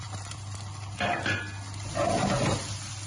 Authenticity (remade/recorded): recorded